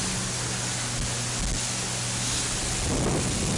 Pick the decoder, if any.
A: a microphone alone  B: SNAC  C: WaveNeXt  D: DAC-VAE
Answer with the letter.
A